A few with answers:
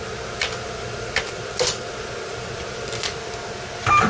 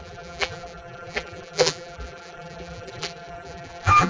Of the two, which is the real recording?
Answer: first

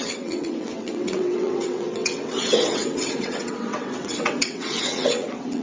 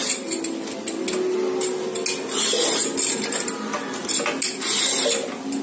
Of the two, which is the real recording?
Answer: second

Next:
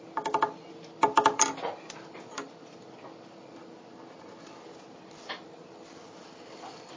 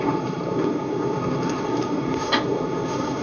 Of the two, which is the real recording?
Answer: first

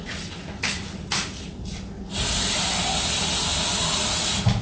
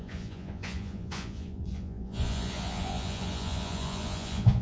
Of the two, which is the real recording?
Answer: first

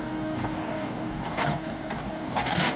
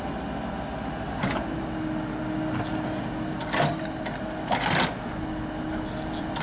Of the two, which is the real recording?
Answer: second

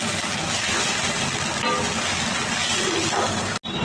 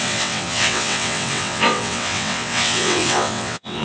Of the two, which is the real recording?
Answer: first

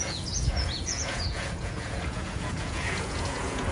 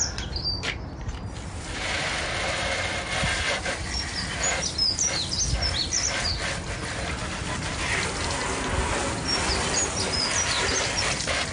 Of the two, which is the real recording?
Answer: second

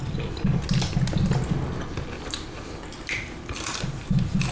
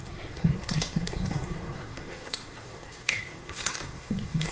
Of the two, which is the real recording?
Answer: first